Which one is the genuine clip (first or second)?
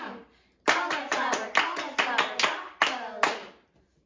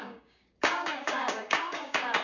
first